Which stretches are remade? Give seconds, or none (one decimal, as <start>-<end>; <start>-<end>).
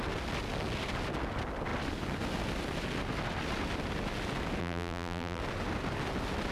4.6-5.4